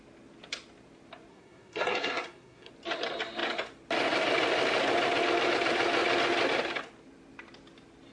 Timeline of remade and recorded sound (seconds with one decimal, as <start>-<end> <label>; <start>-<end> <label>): 0.0-1.3 recorded; 1.3-2.7 remade; 2.7-8.1 recorded